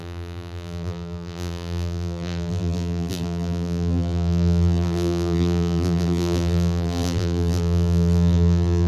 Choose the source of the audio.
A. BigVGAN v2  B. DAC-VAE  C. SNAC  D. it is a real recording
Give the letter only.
A